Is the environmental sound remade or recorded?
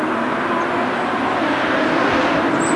recorded